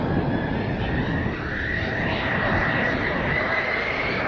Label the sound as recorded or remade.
recorded